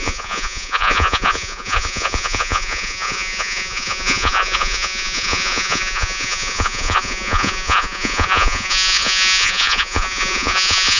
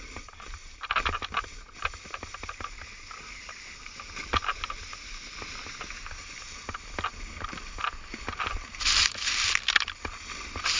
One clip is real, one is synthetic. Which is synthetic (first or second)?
first